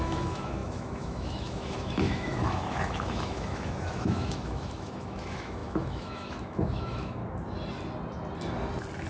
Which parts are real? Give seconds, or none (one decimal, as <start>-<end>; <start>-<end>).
7.2-9.1